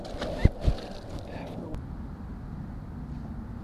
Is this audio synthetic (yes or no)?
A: no